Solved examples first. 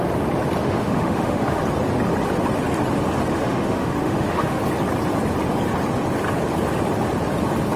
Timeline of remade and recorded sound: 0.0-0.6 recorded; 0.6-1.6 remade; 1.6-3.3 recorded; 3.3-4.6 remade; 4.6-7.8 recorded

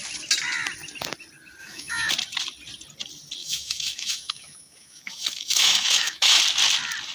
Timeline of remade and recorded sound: 0.0-1.6 recorded; 1.6-2.1 remade; 2.1-3.4 recorded; 3.4-6.4 remade; 6.4-7.1 recorded

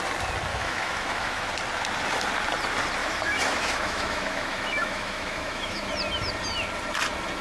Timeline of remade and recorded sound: 0.0-0.5 recorded; 0.5-1.5 remade; 1.5-3.0 recorded; 3.0-5.9 remade; 5.9-7.4 recorded

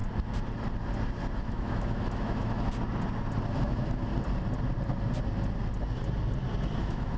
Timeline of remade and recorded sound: 0.0-1.4 recorded; 1.4-2.7 remade; 2.7-3.6 recorded; 3.6-4.1 remade; 4.1-6.8 recorded; 6.8-7.2 remade